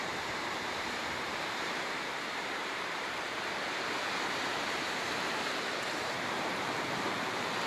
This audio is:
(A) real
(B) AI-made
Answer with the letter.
B